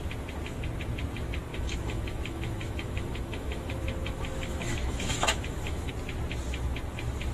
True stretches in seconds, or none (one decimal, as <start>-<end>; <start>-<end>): 0.0-1.5; 5.9-7.3